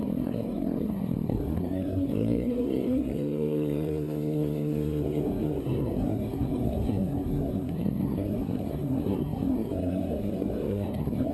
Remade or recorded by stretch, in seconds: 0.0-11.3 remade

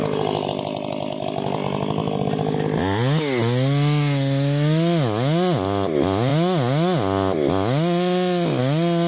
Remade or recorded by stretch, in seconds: 0.0-9.1 recorded

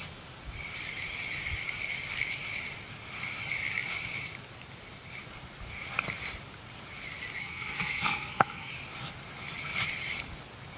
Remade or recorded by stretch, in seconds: 0.0-7.4 recorded; 7.4-8.7 remade; 8.7-10.8 recorded

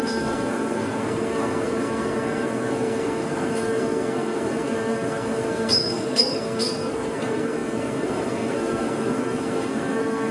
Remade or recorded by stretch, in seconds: 0.0-10.3 remade

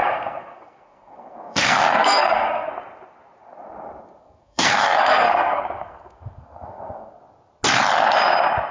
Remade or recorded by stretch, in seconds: 0.0-2.7 remade; 2.7-4.2 recorded; 4.2-7.2 remade; 7.2-8.7 recorded

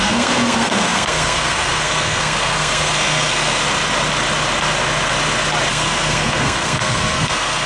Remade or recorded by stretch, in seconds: 0.0-3.6 remade; 3.6-5.7 recorded; 5.7-7.7 remade

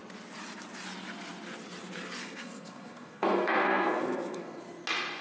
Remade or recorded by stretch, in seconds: 0.0-2.2 recorded; 2.2-4.6 remade; 4.6-5.2 recorded